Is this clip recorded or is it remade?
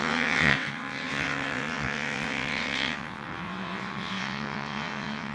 remade